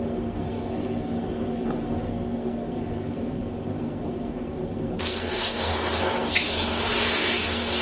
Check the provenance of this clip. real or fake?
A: fake